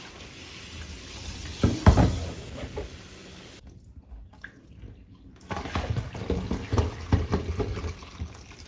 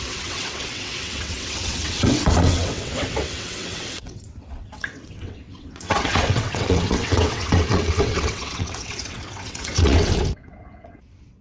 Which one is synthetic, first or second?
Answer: second